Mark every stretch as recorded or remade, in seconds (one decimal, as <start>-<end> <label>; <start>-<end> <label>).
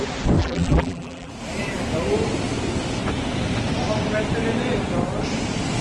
0.0-0.4 recorded; 0.4-1.3 remade; 1.3-5.8 recorded